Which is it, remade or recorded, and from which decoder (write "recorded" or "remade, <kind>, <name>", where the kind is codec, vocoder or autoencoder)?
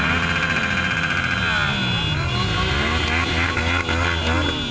recorded